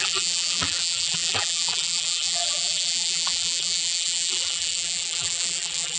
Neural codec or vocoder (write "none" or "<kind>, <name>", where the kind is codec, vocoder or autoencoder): vocoder, BigVGAN v2